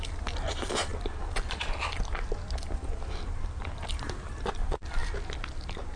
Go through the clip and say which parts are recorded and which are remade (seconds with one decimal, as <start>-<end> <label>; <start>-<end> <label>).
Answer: 0.0-6.0 recorded